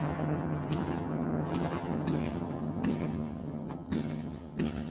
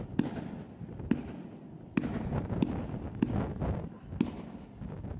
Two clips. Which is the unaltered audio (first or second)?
second